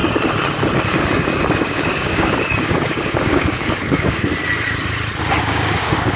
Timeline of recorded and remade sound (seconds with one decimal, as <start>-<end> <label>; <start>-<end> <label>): 0.0-1.6 recorded; 1.6-4.3 remade; 4.3-5.4 recorded; 5.4-6.2 remade